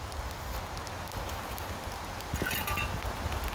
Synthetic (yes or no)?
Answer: no